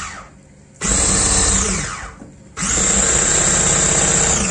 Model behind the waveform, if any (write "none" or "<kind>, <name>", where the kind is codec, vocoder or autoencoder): none